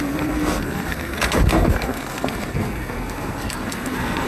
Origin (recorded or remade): remade